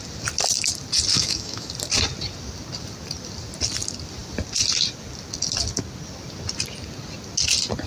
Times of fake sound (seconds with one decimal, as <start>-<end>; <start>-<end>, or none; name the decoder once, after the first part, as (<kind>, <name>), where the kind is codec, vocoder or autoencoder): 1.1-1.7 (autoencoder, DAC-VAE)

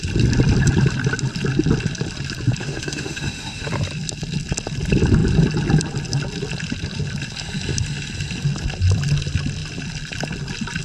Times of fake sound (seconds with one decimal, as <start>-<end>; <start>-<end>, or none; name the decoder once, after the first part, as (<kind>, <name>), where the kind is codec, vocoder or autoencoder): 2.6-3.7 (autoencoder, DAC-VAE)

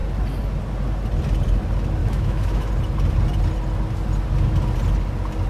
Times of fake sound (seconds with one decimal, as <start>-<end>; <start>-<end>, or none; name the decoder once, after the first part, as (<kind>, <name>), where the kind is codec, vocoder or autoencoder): 2.0-2.7 (autoencoder, DAC-VAE)